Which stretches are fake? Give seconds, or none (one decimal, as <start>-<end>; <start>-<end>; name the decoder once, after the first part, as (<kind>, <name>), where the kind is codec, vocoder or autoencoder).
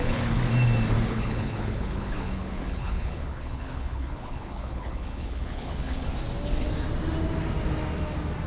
0.0-0.4 (codec, HILCodec); 1.1-6.1